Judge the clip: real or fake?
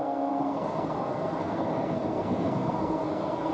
fake